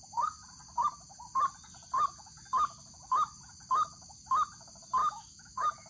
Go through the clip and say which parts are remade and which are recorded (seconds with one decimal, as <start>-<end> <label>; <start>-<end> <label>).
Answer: 0.0-5.0 recorded; 5.0-5.9 remade